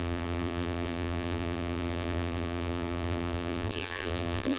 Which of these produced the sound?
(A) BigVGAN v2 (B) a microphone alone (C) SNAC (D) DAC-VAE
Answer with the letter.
A